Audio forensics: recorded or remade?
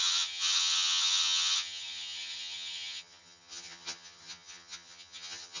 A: remade